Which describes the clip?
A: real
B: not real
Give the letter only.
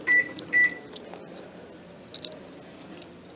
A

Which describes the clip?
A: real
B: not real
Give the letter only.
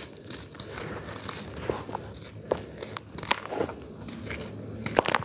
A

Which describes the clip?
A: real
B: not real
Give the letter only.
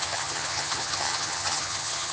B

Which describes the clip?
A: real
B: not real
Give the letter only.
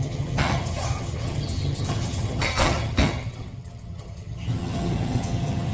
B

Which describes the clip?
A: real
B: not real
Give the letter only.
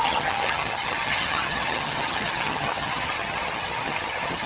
B